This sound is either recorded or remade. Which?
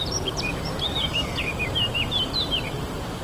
remade